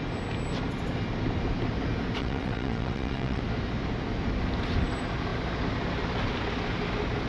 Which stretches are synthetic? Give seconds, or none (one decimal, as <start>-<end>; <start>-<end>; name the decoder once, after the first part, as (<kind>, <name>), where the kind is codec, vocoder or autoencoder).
2.2-3.4 (vocoder, WaveNeXt)